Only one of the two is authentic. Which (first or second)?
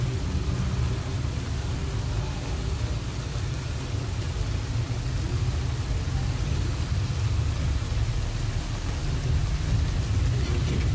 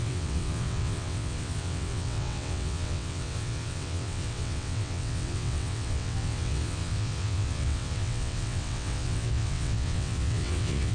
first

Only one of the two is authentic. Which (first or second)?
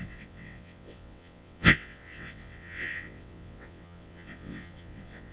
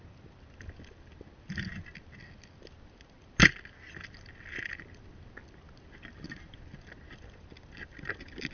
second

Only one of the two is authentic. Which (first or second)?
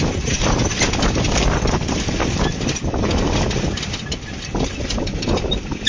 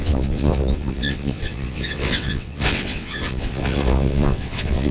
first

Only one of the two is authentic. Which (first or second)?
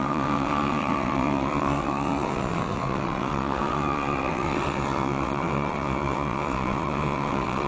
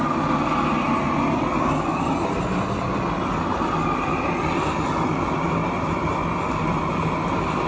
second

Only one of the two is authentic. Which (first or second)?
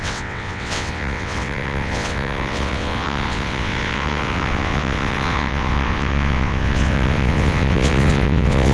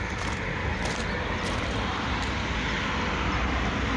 second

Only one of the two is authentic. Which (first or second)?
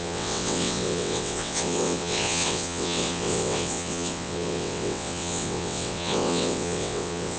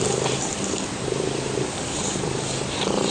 second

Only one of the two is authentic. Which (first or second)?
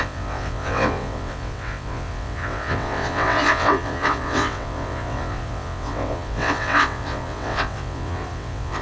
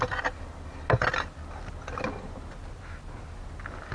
second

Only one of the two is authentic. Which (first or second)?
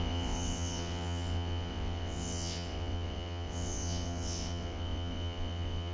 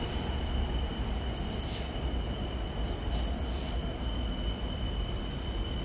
second